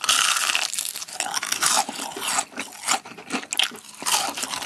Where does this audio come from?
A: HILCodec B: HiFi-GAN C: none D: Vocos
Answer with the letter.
C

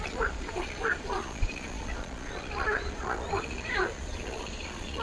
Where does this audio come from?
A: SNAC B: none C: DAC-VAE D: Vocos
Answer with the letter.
D